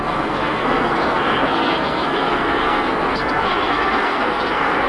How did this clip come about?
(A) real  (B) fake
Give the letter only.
B